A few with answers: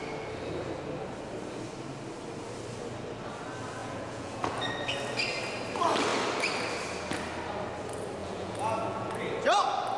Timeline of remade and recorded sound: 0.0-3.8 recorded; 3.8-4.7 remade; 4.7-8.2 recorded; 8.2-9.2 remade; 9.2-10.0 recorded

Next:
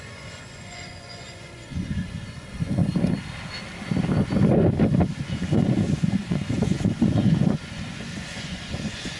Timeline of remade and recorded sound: 0.0-2.8 remade; 2.8-5.2 recorded; 5.2-9.2 remade